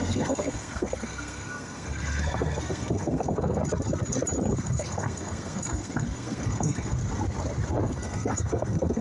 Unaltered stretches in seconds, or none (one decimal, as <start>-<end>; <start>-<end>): 3.6-4.5; 7.0-7.7